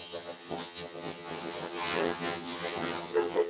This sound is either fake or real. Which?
fake